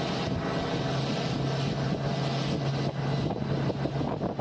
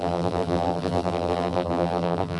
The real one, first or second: first